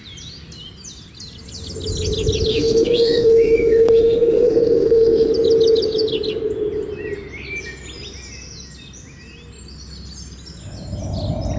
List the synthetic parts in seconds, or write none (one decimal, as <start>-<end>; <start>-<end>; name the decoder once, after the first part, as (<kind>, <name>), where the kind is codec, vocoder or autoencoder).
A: 2.5-5.3 (autoencoder, DAC-VAE)